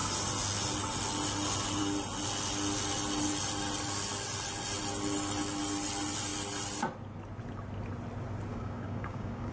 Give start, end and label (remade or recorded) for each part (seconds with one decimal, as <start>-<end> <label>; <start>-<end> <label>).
0.0-8.5 recorded; 8.5-9.5 remade

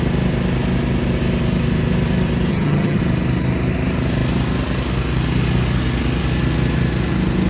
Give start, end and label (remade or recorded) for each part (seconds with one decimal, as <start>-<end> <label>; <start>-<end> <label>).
0.0-2.5 recorded; 2.5-3.0 remade; 3.0-7.5 recorded

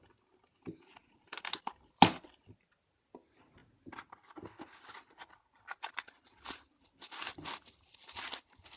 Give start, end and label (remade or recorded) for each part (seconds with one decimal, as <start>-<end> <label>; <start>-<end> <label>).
0.0-1.0 recorded; 1.0-2.7 remade; 2.7-8.8 recorded

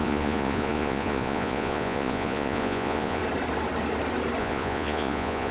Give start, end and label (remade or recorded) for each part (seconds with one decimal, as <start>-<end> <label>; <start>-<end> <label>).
0.0-3.2 remade; 3.2-4.4 recorded; 4.4-5.5 remade

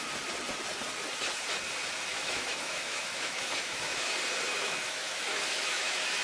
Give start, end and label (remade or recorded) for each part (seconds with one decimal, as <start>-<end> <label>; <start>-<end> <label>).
0.0-2.1 recorded; 2.1-4.1 remade; 4.1-4.5 recorded; 4.5-6.2 remade